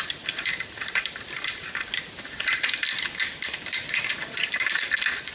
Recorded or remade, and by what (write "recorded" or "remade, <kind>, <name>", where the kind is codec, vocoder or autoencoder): remade, vocoder, BigVGAN v2